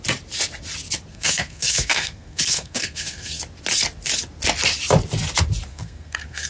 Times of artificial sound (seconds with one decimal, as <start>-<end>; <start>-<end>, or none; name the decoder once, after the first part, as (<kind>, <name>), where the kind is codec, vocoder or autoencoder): 1.1-3.4 (codec, SNAC); 5.7-6.5